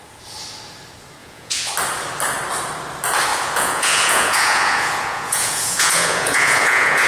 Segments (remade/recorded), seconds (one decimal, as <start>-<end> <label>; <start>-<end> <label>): 0.0-1.2 recorded; 1.2-1.7 remade; 1.7-3.3 recorded; 3.3-7.1 remade

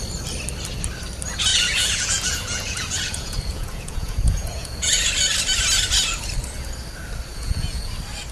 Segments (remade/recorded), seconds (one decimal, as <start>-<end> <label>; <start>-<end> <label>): 0.0-1.5 recorded; 1.5-5.1 remade; 5.1-7.3 recorded; 7.3-7.9 remade; 7.9-8.3 recorded

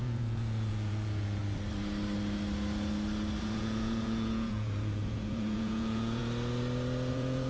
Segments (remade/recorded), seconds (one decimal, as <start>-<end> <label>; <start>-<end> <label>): 0.0-1.4 remade; 1.4-3.4 recorded; 3.4-6.2 remade; 6.2-7.1 recorded; 7.1-7.5 remade